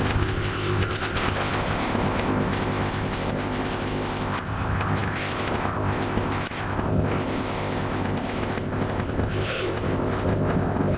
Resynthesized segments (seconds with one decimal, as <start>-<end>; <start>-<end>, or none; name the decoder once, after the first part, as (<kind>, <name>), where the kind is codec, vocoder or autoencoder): 0.0-11.0 (codec, ZipCodec)